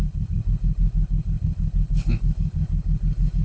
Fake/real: fake